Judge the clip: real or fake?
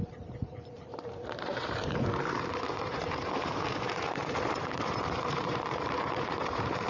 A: fake